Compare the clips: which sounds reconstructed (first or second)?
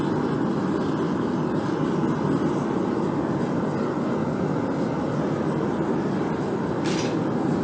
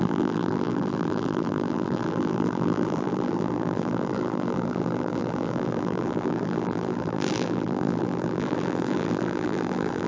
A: second